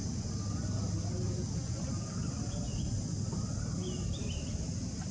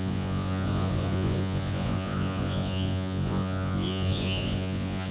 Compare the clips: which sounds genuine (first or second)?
first